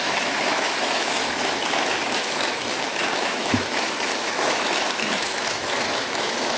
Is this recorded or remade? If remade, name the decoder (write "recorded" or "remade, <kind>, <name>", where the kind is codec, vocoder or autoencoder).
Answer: remade, autoencoder, DAC-VAE